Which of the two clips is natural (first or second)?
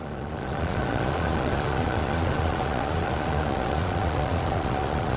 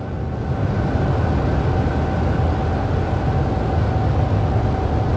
second